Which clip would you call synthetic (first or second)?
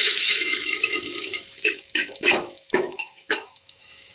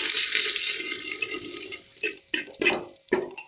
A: first